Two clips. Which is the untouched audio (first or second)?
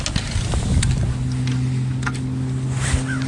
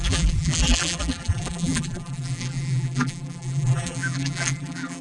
first